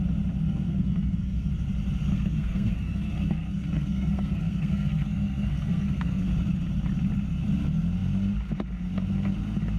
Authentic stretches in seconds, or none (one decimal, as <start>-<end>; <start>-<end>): 0.0-0.4; 1.5-2.1; 6.3-9.8